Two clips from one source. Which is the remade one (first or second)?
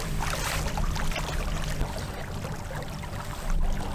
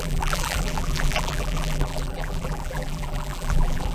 second